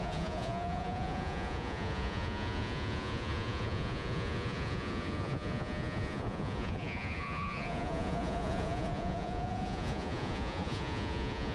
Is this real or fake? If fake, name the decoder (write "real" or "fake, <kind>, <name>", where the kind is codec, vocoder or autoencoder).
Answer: fake, vocoder, Vocos